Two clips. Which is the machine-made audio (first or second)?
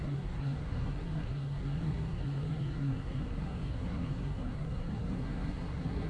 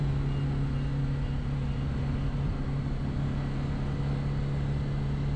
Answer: first